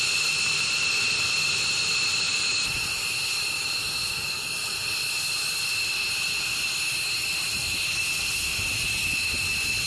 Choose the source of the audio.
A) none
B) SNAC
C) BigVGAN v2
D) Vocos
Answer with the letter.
A